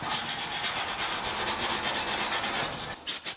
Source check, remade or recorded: recorded